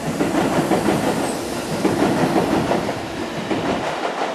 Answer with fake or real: real